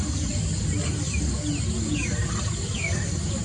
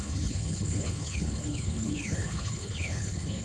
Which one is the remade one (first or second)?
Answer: second